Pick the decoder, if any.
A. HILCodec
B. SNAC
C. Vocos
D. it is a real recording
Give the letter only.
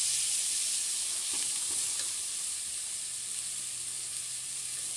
D